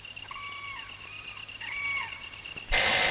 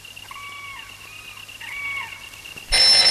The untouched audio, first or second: second